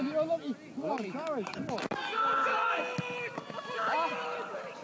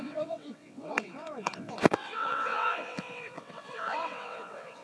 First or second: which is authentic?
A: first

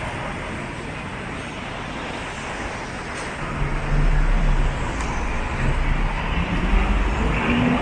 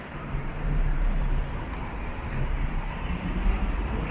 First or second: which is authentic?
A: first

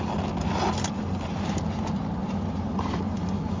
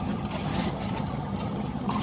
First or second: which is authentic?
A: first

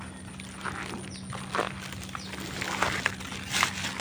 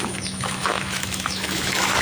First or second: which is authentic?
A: first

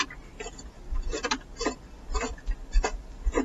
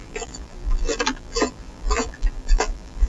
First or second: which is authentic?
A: first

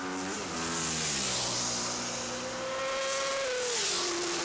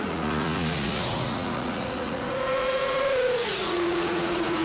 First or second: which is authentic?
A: first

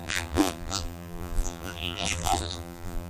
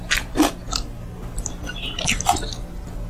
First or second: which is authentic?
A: second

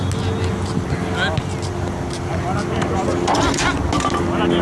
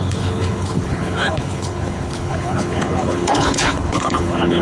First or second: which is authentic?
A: first